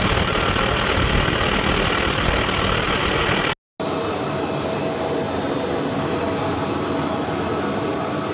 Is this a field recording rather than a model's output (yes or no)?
yes